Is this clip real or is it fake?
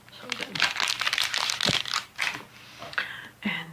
real